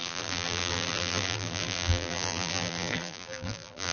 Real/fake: fake